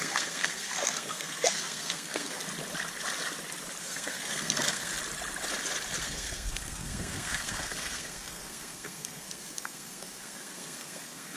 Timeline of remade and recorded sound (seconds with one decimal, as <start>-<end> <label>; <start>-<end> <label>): 0.0-2.4 remade; 2.4-3.8 recorded; 3.8-4.9 remade; 4.9-6.0 recorded; 6.0-11.4 remade